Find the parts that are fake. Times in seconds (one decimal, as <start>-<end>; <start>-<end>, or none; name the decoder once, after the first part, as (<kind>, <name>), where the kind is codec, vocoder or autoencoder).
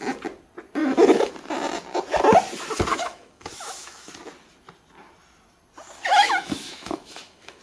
0.8-1.3 (autoencoder, DAC-VAE); 2.9-4.1; 6.1-7.6